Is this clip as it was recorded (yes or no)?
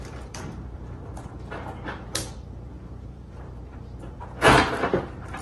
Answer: no